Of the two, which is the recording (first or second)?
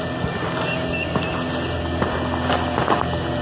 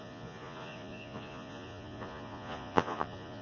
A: first